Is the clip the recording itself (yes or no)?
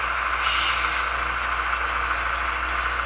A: yes